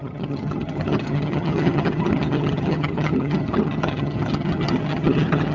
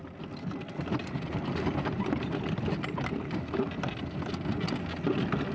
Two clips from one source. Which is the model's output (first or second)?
first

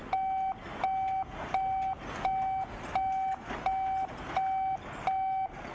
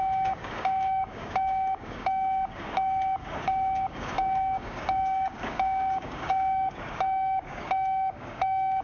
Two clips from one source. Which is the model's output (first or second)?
second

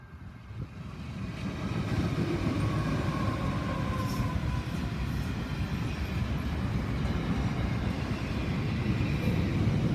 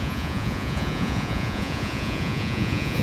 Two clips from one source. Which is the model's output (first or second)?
second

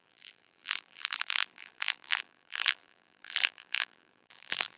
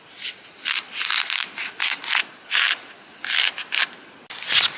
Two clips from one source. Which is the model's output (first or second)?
first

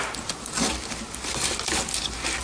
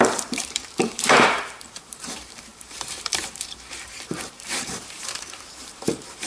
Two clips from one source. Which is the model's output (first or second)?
second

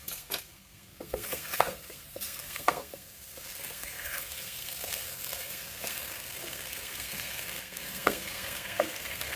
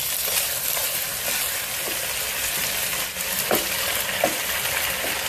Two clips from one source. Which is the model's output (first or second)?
first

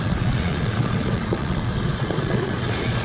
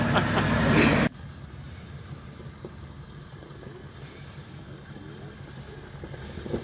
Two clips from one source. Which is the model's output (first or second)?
first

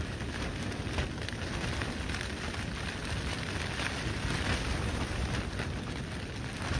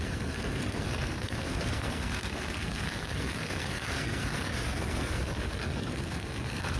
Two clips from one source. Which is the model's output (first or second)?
second